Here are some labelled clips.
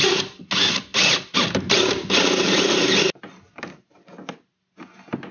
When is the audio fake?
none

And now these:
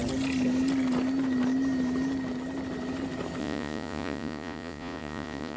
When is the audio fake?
3.4-5.6 (vocoder, Vocos)

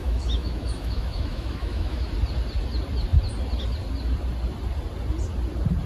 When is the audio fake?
0.0-2.1 (autoencoder, DAC-VAE)

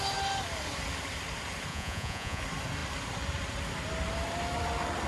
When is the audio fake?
1.7-2.4 (vocoder, Vocos)